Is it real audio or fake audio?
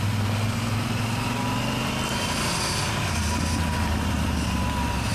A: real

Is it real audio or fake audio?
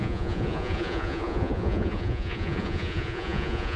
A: fake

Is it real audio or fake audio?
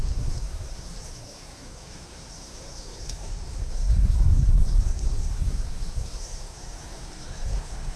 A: fake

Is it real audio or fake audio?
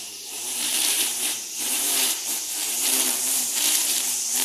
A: fake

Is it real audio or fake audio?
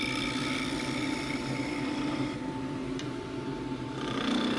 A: real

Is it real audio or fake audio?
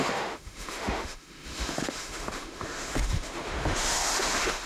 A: fake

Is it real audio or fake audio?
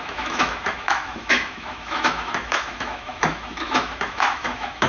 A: fake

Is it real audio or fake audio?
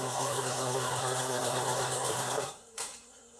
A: fake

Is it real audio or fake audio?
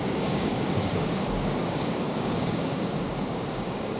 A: fake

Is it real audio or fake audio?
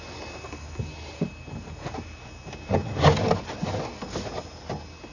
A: real